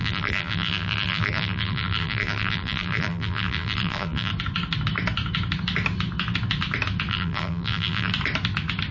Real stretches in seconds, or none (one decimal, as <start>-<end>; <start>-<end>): 4.3-7.1; 8.1-8.9